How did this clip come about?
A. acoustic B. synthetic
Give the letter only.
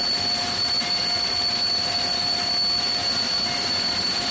A